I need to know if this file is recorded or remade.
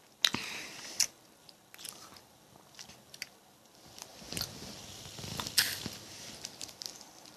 recorded